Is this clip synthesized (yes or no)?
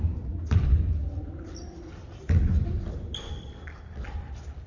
no